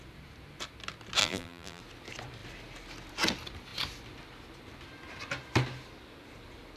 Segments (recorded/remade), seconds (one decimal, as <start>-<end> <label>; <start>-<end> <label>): 0.0-1.2 recorded; 1.2-1.8 remade; 1.8-6.8 recorded

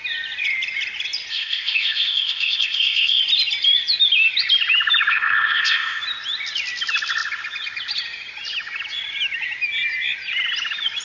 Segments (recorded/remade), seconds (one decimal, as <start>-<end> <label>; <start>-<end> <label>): 0.0-1.3 recorded; 1.3-3.2 remade; 3.2-5.1 recorded; 5.1-6.0 remade; 6.0-11.0 recorded

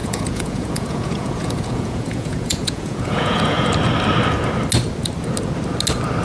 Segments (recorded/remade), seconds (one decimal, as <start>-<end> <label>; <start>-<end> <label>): 0.0-3.7 remade; 3.7-6.2 recorded

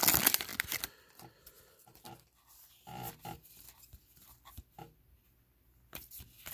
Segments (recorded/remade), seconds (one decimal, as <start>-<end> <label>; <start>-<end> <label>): 0.0-0.5 recorded; 0.5-3.1 remade; 3.1-6.5 recorded

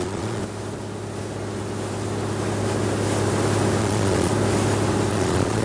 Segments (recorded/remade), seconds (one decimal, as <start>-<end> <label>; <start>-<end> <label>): 0.0-0.4 remade; 0.4-3.8 recorded; 3.8-4.3 remade; 4.3-5.1 recorded; 5.1-5.6 remade

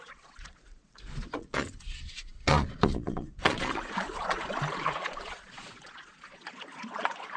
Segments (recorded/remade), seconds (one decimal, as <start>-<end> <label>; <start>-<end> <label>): 0.0-7.4 remade